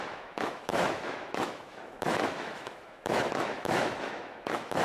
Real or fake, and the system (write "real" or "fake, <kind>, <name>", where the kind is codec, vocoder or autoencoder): fake, autoencoder, DAC-VAE